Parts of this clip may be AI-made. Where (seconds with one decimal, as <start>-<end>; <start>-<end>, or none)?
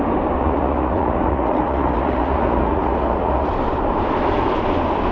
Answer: 0.4-3.5